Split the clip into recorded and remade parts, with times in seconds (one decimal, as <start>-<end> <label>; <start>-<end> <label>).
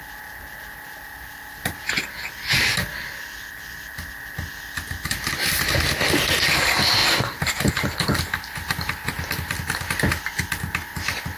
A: 0.0-7.0 recorded; 7.0-7.7 remade; 7.7-11.4 recorded